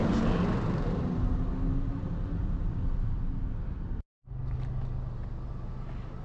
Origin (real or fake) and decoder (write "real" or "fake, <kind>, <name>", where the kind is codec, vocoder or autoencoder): real